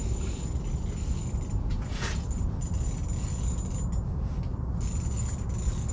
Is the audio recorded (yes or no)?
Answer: yes